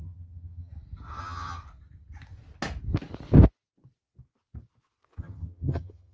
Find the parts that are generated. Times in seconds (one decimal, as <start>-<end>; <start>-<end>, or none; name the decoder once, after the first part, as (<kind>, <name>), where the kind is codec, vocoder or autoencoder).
0.0-0.7 (vocoder, HiFi-GAN); 1.2-1.6; 5.2-6.1